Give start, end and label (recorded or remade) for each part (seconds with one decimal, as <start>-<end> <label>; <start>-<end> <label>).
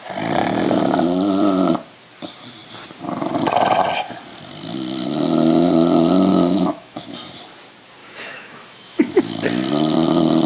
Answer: 0.0-6.3 recorded; 6.3-7.1 remade; 7.1-8.0 recorded; 8.0-9.2 remade; 9.2-10.5 recorded